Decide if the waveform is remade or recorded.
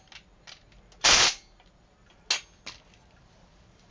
recorded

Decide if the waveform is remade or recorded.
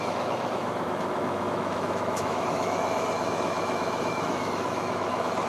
remade